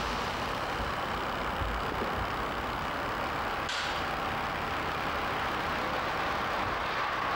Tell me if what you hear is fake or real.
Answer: real